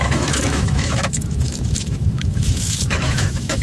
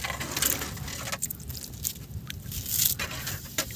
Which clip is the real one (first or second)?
second